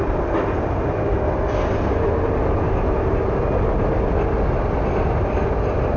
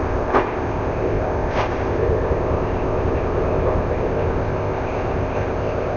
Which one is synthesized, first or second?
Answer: second